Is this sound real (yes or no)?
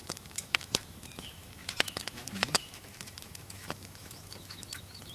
no